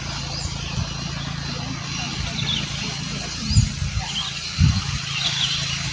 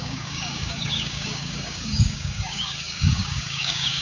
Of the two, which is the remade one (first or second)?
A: second